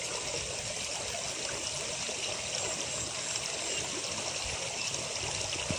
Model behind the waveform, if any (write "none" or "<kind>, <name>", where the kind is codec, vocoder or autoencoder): none